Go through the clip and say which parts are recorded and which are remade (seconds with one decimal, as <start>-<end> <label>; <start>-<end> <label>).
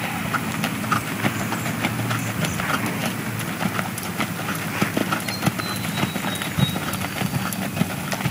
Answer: 0.0-5.0 recorded; 5.0-5.6 remade; 5.6-8.3 recorded